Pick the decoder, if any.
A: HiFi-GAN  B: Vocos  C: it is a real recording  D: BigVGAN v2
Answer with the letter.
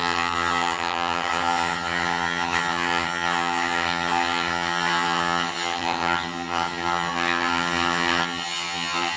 A